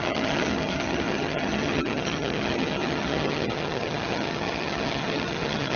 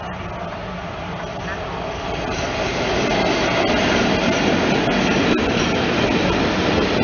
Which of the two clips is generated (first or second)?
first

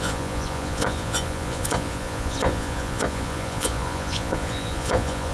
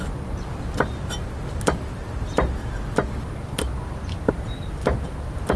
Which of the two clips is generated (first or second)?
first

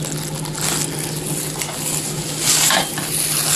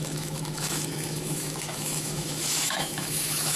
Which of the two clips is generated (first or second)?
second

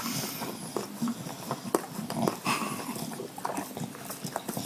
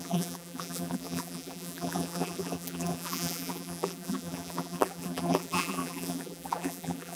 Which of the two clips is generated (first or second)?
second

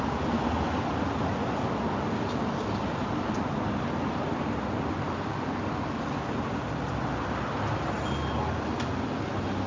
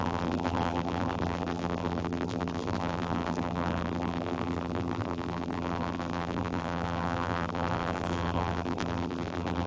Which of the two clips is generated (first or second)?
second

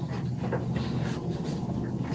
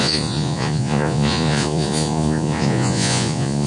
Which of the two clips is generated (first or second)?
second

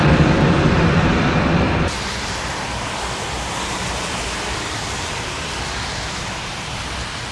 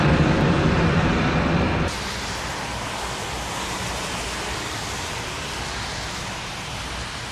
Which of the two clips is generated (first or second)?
first